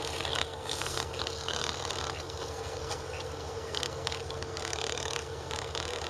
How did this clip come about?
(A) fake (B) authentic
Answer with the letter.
A